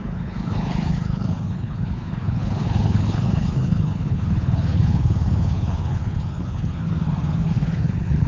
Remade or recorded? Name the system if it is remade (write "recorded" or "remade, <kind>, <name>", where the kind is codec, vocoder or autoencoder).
remade, codec, HILCodec